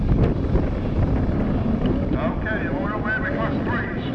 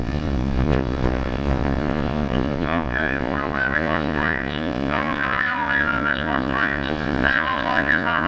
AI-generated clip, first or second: second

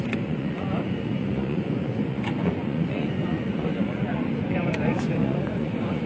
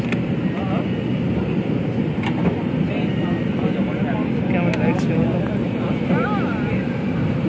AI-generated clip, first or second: first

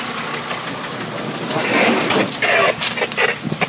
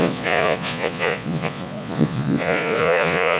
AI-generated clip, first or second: second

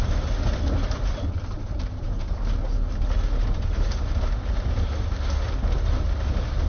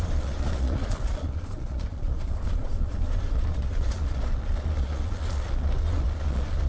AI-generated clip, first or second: second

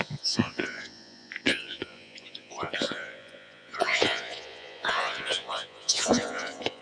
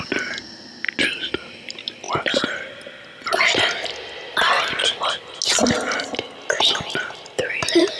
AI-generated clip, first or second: first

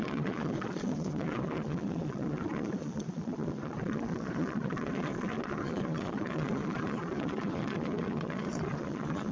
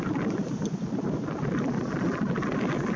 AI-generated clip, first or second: first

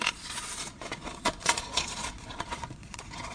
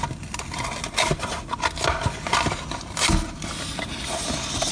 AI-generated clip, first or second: first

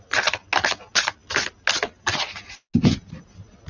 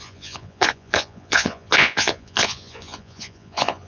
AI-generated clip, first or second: second